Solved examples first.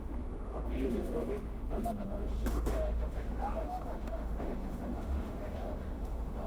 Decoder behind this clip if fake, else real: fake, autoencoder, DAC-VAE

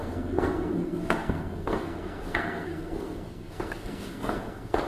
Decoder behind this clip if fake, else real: fake, codec, SNAC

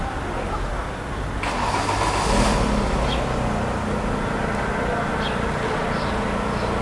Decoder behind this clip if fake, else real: real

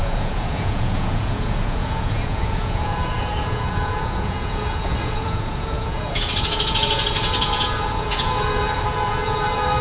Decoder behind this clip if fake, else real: fake, vocoder, Vocos